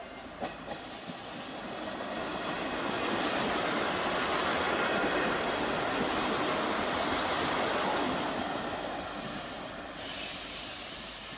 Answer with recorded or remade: recorded